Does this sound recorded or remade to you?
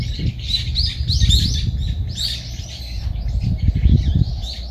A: recorded